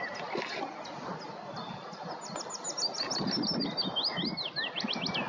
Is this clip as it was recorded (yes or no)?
yes